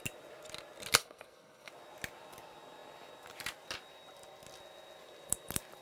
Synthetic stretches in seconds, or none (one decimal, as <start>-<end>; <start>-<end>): 1.0-1.7